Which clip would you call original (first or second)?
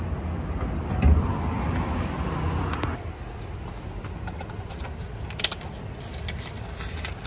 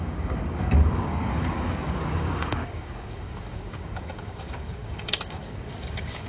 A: first